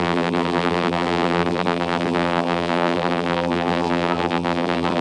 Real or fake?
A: fake